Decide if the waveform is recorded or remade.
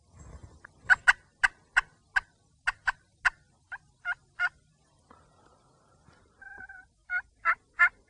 recorded